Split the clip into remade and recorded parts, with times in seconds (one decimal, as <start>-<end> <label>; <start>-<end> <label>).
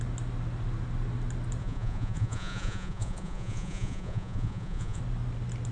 0.0-1.6 recorded; 1.6-5.0 remade; 5.0-5.7 recorded